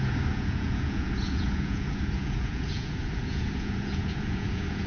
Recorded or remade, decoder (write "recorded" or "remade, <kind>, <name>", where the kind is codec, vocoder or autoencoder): remade, vocoder, Vocos